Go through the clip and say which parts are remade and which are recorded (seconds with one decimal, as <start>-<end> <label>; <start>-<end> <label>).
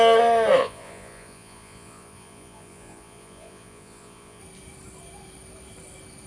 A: 0.0-0.6 recorded; 0.6-4.4 remade; 4.4-6.3 recorded